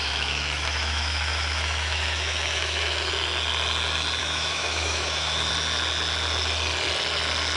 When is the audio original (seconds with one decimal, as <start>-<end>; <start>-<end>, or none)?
3.1-4.2; 5.5-7.6